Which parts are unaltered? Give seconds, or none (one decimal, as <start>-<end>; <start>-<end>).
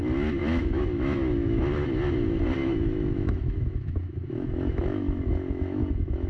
0.0-0.4; 1.6-2.6